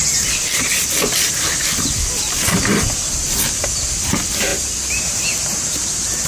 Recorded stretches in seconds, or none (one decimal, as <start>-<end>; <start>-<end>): 0.0-4.5